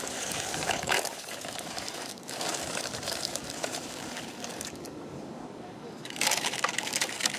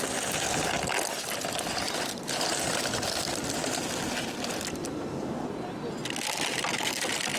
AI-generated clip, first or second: first